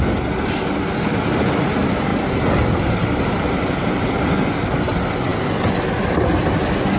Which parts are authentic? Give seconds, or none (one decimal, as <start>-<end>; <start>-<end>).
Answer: 0.0-2.1; 4.3-7.0